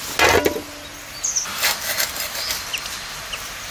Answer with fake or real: real